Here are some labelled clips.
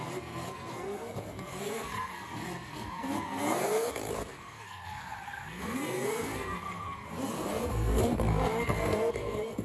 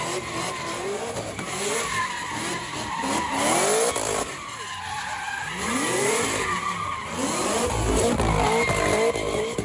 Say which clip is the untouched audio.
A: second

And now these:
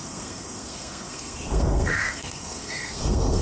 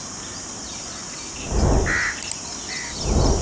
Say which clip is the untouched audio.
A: second